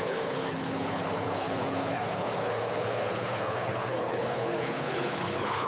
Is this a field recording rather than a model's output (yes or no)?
no